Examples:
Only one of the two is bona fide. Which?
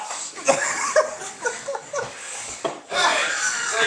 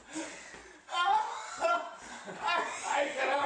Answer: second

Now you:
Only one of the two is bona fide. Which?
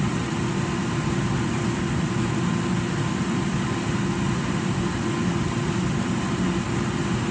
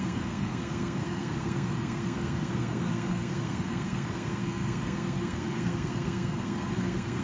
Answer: first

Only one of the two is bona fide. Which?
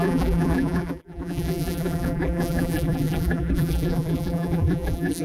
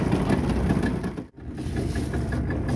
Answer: second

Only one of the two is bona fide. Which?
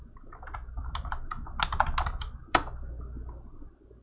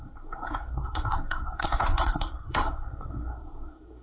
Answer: first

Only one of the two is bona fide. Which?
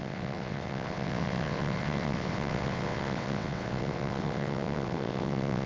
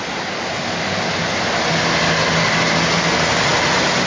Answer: second